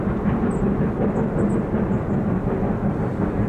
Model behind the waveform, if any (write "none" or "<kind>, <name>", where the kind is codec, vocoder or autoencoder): none